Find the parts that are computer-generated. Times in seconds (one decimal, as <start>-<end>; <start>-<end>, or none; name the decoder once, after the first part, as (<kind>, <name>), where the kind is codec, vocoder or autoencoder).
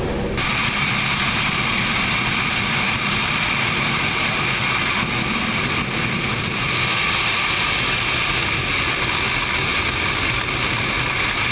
none